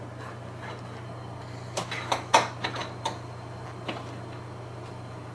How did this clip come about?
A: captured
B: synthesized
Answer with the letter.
A